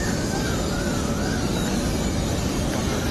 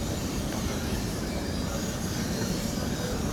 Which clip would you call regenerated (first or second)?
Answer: second